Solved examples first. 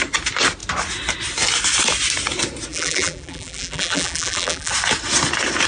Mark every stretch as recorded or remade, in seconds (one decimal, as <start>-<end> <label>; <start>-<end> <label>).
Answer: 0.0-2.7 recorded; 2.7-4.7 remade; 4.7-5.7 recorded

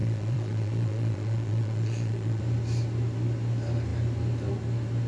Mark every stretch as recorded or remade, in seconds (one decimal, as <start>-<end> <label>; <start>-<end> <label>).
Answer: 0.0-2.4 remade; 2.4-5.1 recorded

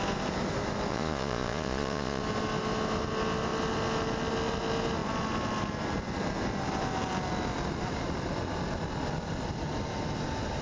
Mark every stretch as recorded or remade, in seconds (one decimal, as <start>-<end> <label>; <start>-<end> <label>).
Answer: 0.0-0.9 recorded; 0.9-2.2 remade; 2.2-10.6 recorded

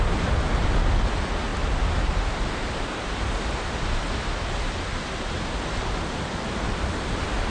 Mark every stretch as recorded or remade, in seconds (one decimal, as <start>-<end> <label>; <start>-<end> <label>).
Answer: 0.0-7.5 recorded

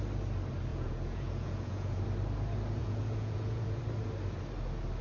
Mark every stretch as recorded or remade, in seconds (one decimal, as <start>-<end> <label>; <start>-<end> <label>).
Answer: 0.0-0.7 recorded; 0.7-2.0 remade; 2.0-2.8 recorded; 2.8-3.8 remade; 3.8-5.0 recorded

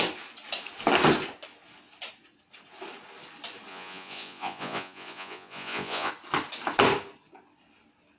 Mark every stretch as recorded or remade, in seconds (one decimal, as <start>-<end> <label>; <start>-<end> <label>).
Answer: 0.0-3.7 recorded; 3.7-6.1 remade; 6.1-8.2 recorded